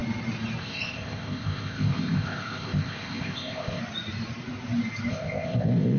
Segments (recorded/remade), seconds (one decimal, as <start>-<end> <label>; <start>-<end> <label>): 0.0-0.6 recorded; 0.6-3.8 remade; 3.8-5.1 recorded; 5.1-6.0 remade